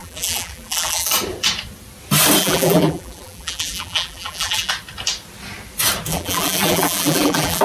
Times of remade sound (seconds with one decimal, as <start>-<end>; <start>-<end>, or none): 0.0-1.1; 2.4-4.7; 6.1-7.6